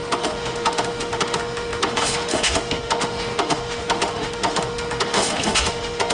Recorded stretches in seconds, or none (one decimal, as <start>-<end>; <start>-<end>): none